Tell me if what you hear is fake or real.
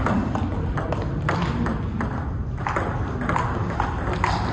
real